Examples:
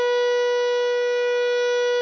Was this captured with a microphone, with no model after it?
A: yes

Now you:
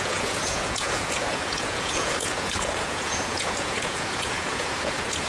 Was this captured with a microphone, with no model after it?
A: no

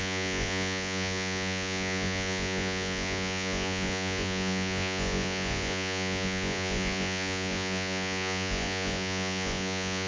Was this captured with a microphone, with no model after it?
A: no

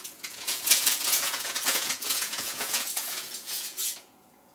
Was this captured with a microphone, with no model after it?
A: no